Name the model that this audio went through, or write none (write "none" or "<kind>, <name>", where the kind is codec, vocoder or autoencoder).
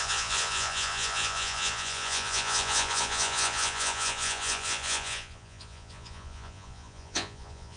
vocoder, Vocos